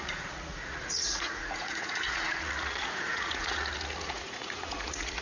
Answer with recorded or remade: remade